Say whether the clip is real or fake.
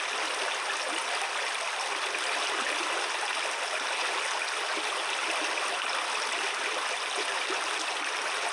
real